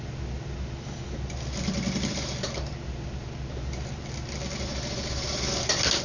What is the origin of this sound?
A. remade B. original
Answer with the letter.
B